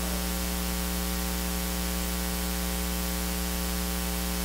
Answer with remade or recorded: recorded